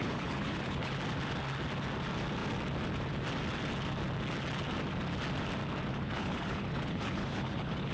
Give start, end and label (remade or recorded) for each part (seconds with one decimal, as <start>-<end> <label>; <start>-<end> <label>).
0.0-0.9 remade; 0.9-5.9 recorded; 5.9-7.9 remade